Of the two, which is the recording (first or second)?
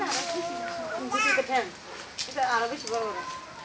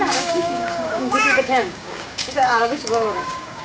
first